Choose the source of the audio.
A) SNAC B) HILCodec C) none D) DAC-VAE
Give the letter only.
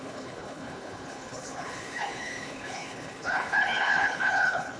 B